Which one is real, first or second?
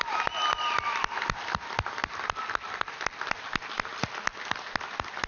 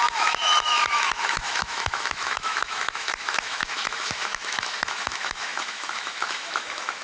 first